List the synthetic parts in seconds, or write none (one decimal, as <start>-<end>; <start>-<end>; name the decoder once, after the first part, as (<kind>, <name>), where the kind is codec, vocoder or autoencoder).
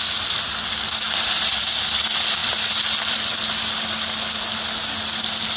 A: none